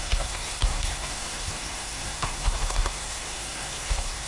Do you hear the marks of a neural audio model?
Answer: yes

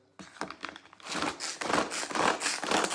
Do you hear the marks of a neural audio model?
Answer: no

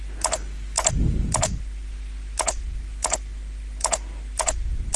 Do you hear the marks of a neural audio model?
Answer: no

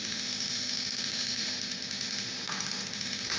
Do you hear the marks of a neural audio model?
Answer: yes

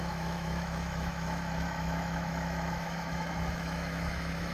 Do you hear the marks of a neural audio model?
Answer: yes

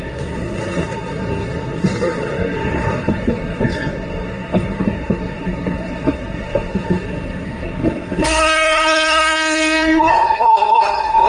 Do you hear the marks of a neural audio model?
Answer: yes